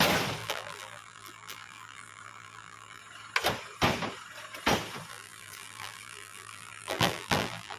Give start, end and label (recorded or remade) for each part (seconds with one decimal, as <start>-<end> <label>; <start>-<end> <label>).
0.0-0.4 recorded; 0.4-3.0 remade; 3.0-5.1 recorded; 5.1-7.8 remade